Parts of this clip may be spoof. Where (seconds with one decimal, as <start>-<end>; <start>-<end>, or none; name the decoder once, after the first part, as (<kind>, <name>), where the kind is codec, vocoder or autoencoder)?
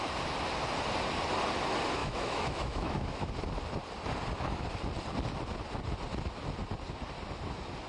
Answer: 2.0-3.3 (autoencoder, DAC-VAE)